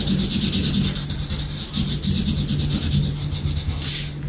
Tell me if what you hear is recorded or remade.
recorded